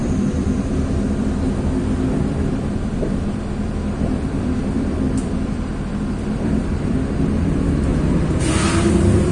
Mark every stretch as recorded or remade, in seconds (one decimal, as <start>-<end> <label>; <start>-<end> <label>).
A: 0.0-7.9 remade; 7.9-8.9 recorded; 8.9-9.3 remade

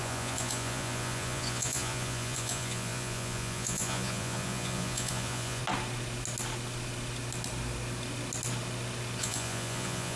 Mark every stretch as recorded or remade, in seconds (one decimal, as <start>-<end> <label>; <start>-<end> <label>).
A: 0.0-5.6 remade; 5.6-9.2 recorded; 9.2-10.2 remade

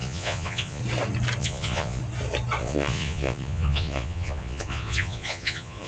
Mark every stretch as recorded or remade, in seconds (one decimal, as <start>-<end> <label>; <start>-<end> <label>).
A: 0.0-0.8 remade; 0.8-1.4 recorded; 1.4-2.0 remade; 2.0-2.6 recorded; 2.6-5.9 remade

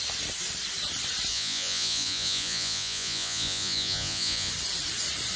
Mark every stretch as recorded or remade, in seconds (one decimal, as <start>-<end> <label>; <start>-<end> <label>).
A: 0.0-1.3 recorded; 1.3-4.5 remade; 4.5-5.4 recorded

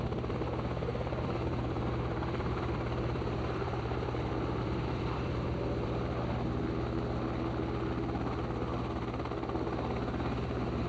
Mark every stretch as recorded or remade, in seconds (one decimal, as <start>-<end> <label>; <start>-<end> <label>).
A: 0.0-0.9 recorded; 0.9-6.2 remade; 6.2-10.9 recorded

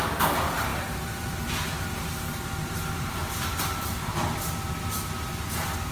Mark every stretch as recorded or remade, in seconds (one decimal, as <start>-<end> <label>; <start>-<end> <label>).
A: 0.0-5.9 recorded

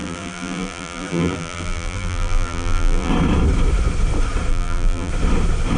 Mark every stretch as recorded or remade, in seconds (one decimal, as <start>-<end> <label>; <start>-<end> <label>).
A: 0.0-3.1 remade; 3.1-4.5 recorded; 4.5-5.1 remade; 5.1-5.8 recorded